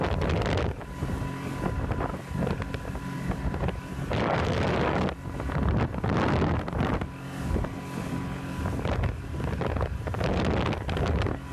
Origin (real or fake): real